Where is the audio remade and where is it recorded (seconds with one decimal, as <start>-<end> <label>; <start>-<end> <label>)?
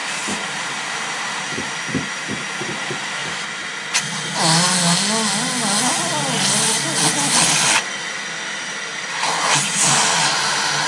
0.0-2.3 remade; 2.3-10.9 recorded